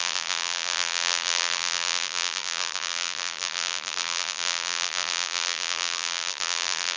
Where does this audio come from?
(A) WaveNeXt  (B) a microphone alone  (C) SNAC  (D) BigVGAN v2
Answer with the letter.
D